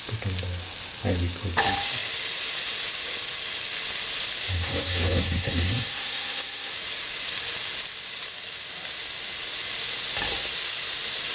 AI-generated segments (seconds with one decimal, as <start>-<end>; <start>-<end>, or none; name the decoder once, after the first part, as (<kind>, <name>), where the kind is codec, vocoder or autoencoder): 4.5-6.7 (codec, SNAC)